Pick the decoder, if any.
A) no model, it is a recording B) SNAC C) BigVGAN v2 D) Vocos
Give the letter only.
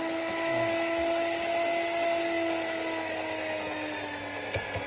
A